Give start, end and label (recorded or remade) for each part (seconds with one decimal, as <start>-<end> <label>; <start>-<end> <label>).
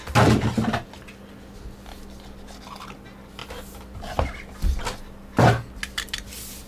0.0-6.7 recorded